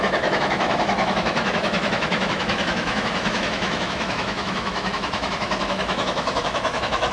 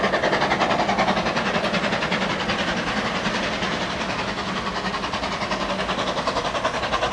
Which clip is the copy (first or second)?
first